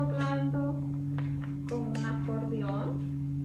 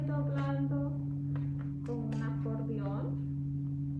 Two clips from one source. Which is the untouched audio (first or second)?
second